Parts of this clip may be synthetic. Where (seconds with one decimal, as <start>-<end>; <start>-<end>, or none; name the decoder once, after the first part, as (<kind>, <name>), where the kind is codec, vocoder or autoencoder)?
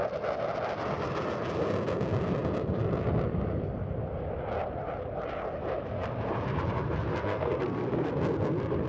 7.1-8.1 (codec, SNAC)